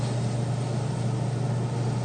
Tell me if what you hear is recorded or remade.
recorded